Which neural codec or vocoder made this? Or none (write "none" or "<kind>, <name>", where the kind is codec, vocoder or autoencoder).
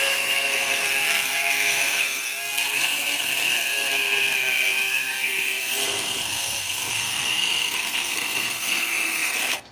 codec, SNAC